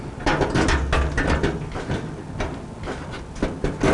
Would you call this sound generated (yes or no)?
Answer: no